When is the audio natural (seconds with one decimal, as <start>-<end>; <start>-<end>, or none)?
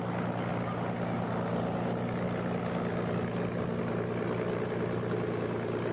0.0-5.9